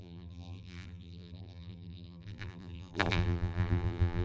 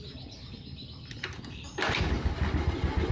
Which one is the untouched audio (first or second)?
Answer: second